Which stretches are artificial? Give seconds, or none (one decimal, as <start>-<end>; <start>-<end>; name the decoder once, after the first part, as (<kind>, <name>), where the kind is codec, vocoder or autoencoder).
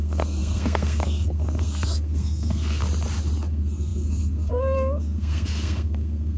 0.0-2.8 (codec, SNAC); 3.5-6.4